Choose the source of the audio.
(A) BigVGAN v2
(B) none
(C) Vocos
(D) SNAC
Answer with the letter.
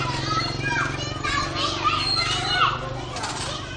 B